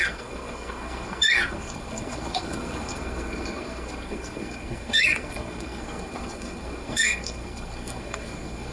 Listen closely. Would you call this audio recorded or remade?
remade